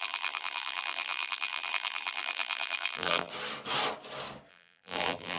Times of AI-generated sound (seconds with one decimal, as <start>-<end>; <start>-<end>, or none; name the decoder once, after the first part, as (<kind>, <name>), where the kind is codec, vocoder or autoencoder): 0.0-3.3 (vocoder, BigVGAN v2); 4.5-5.4